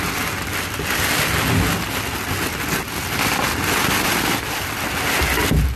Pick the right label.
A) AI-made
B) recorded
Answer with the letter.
B